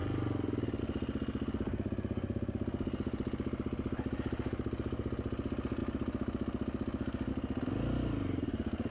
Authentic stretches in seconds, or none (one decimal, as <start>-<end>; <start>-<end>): 0.0-8.9